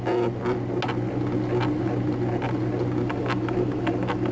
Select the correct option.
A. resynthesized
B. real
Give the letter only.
B